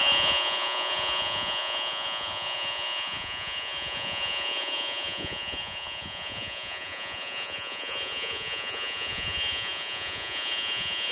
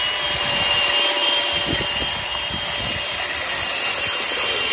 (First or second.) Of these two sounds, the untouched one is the second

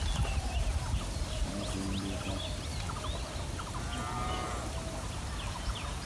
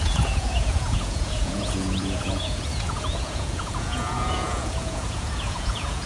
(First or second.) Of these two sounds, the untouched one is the first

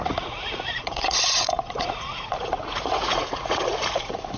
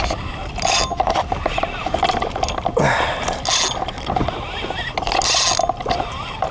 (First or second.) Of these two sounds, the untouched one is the second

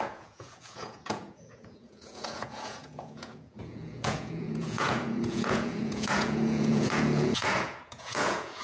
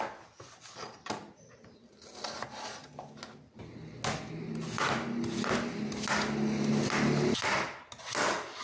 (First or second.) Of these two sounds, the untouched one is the second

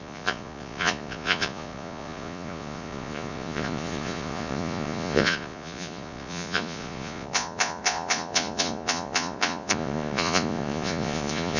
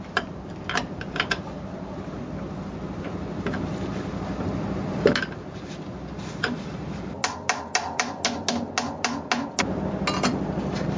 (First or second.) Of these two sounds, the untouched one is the second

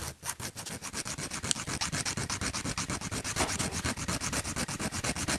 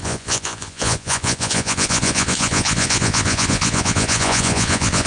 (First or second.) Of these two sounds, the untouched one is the first